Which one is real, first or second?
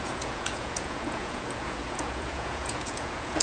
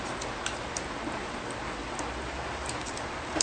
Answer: second